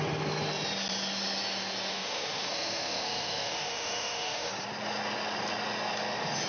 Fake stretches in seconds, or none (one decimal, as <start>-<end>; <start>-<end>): 1.9-4.5